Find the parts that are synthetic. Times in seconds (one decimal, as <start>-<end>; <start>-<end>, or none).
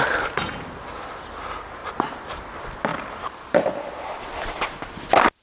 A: 1.8-2.5; 2.9-3.7